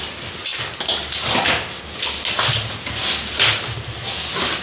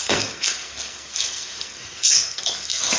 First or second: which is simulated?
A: second